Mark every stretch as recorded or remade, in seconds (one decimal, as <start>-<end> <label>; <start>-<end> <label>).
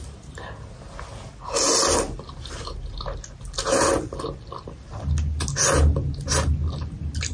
0.0-7.3 recorded